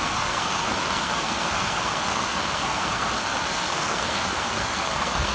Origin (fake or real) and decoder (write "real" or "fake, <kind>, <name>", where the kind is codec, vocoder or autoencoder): fake, codec, SNAC